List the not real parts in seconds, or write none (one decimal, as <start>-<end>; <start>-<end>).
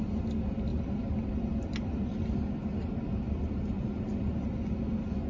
none